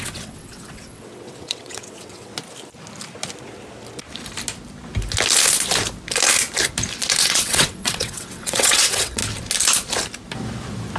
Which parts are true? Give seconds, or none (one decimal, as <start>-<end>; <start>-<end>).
2.3-7.2; 9.2-11.0